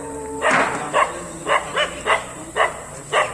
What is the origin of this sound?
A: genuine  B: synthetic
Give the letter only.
A